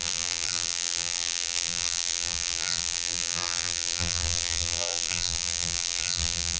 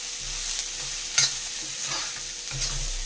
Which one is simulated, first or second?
first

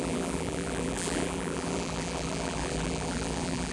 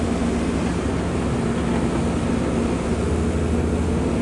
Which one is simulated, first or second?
first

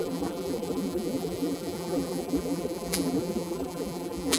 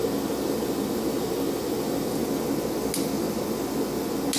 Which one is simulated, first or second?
first